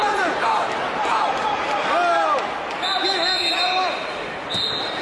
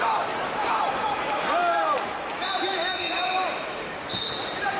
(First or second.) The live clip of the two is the first